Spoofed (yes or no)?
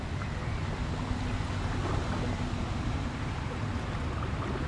no